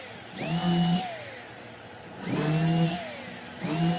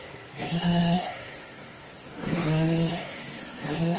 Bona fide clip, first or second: first